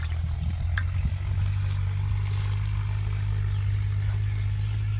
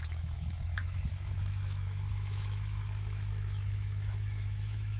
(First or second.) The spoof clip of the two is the second